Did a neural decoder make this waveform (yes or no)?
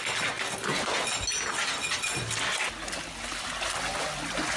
no